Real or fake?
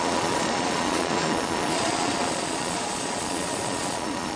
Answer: fake